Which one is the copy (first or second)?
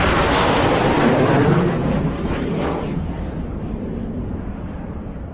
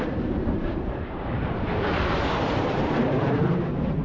second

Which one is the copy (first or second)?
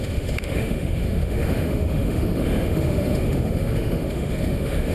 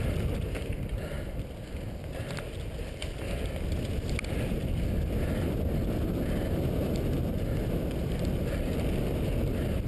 first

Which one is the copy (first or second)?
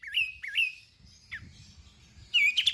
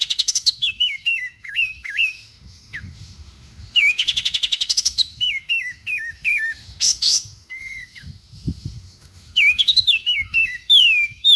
second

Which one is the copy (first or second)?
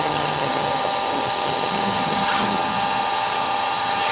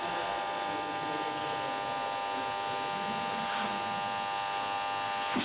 first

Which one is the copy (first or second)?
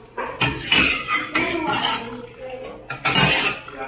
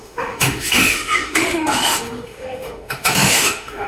second